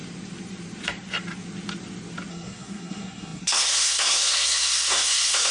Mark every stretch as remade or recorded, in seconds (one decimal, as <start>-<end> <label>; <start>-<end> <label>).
0.0-2.3 recorded; 2.3-5.5 remade